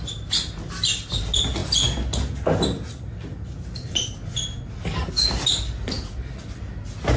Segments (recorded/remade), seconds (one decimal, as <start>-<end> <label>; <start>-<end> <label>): 0.0-7.2 recorded